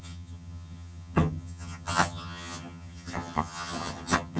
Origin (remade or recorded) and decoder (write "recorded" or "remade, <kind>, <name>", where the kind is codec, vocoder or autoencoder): remade, vocoder, HiFi-GAN